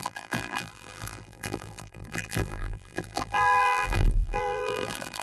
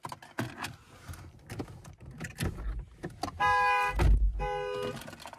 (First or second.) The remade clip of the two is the first